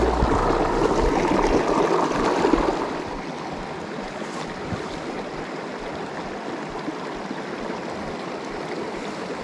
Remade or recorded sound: recorded